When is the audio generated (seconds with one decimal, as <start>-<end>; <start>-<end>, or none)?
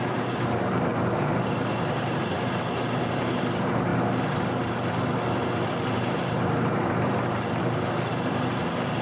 0.0-3.9; 5.7-9.0